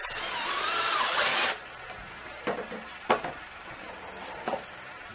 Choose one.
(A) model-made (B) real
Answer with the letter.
B